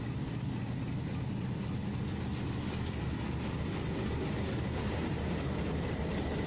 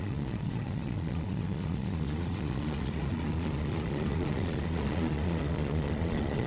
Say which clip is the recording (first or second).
first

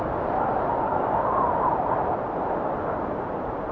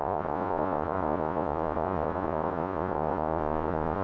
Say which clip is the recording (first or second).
first